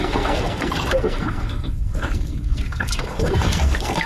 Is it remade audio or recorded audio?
remade